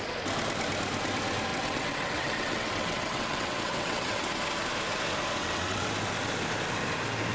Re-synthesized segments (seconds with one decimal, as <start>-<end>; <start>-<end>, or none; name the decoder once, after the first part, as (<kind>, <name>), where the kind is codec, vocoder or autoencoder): 1.5-4.3 (vocoder, WaveNeXt); 5.4-5.9